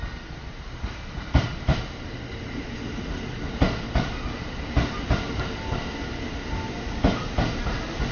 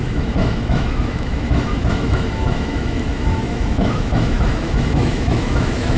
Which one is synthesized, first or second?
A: second